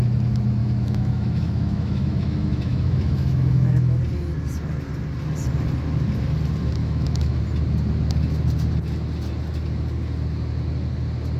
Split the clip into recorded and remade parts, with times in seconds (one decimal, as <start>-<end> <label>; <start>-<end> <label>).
0.0-0.6 recorded; 0.6-4.0 remade; 4.0-6.8 recorded; 6.8-7.4 remade; 7.4-11.4 recorded